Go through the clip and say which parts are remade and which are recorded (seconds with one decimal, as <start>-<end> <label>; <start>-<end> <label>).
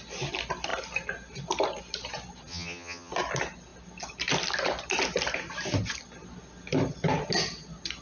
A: 0.0-2.5 recorded; 2.5-3.1 remade; 3.1-8.0 recorded